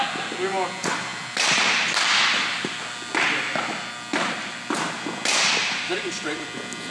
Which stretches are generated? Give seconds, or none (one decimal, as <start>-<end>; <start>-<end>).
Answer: none